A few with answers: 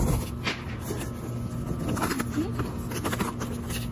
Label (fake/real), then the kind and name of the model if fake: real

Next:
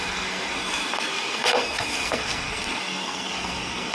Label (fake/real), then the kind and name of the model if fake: fake, codec, SNAC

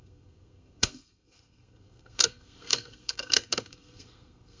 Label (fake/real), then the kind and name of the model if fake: fake, codec, SNAC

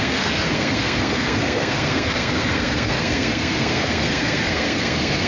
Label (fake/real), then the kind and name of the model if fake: fake, codec, SNAC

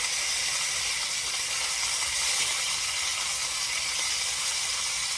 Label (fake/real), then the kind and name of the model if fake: real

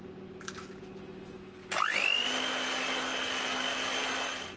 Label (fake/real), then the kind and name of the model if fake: real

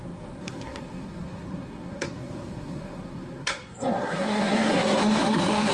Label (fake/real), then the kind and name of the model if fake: fake, codec, SNAC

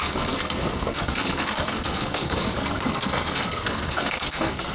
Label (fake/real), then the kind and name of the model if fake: fake, codec, SNAC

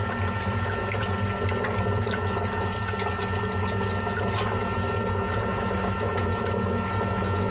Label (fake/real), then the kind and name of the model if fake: real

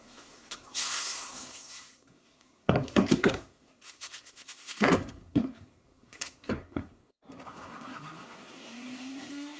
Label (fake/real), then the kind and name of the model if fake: fake, codec, SNAC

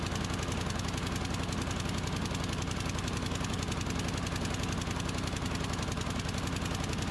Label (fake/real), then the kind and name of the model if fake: real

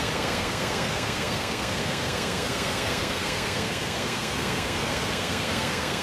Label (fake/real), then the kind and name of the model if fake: fake, codec, SNAC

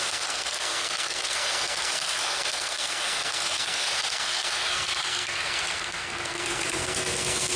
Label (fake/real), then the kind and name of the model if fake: fake, codec, SNAC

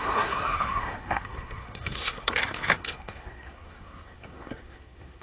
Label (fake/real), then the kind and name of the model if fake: fake, codec, SNAC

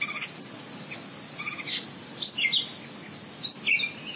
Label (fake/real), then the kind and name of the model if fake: real